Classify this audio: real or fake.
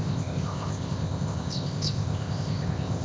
fake